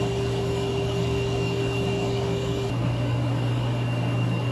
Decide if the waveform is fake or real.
fake